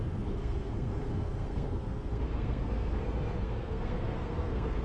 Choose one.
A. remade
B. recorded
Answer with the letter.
A